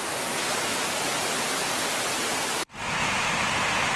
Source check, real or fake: real